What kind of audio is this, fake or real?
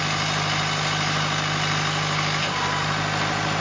real